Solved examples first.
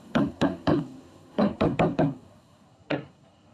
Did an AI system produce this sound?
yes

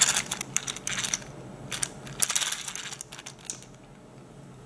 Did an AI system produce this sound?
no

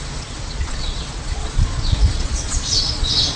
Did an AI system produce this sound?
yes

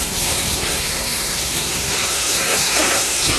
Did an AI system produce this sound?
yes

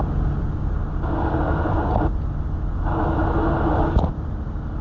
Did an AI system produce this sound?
no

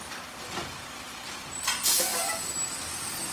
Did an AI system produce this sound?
no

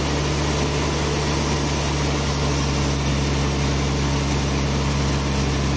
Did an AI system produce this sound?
no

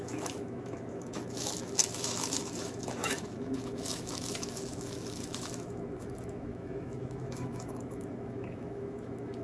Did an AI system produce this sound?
yes